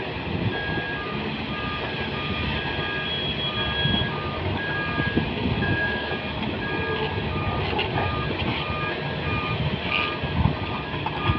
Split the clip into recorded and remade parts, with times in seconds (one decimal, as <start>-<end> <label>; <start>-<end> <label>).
0.0-5.3 recorded; 5.3-6.1 remade; 6.1-11.4 recorded